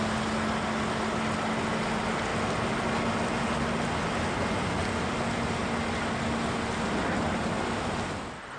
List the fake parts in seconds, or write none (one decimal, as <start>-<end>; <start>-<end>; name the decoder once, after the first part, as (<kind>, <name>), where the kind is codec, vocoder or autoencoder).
none

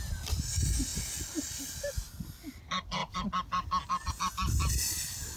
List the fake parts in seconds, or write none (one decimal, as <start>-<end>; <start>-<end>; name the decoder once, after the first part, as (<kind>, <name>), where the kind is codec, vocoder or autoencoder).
none

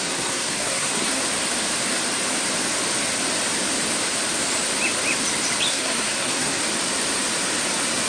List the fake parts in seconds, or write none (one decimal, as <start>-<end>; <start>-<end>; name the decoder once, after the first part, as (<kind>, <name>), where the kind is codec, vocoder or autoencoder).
0.0-1.2 (codec, SNAC); 5.7-6.6

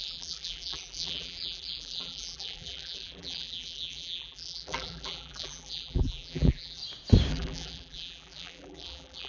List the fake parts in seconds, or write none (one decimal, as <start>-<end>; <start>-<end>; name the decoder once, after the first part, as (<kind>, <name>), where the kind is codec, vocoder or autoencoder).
0.0-6.8 (vocoder, BigVGAN v2); 7.3-9.3

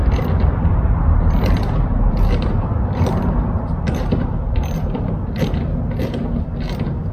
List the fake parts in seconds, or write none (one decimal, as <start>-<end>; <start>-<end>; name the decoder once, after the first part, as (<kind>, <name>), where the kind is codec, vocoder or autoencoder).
0.6-7.1 (vocoder, BigVGAN v2)

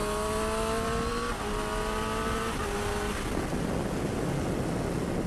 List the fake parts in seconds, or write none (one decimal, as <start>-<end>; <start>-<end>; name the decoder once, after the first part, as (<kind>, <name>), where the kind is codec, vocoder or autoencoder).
none